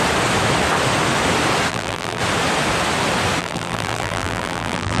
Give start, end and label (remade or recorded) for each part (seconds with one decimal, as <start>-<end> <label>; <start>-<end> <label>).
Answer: 0.0-1.7 recorded; 1.7-2.2 remade; 2.2-3.4 recorded; 3.4-5.0 remade